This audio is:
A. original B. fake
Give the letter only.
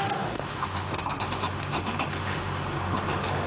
B